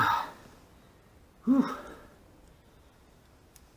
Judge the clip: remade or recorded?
recorded